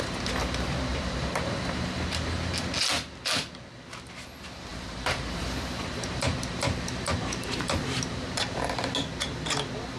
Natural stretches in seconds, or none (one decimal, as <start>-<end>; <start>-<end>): 0.0-0.9; 2.6-4.7; 8.9-10.0